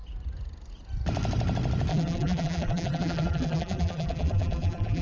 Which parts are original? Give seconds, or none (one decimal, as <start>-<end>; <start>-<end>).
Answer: 0.0-1.9